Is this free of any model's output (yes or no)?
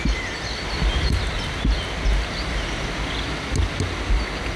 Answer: yes